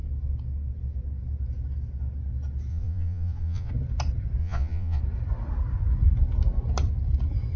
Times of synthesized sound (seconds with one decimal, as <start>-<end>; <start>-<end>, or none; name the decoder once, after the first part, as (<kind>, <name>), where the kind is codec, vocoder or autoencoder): 2.7-3.7 (vocoder, Vocos); 4.4-5.0